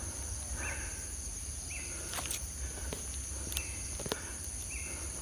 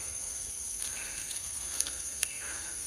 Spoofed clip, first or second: second